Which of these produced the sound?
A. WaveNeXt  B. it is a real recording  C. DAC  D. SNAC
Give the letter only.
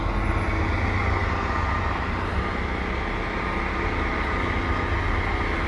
B